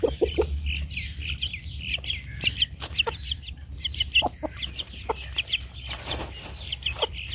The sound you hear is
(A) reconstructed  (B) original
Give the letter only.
B